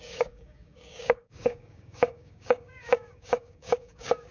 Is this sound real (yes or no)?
no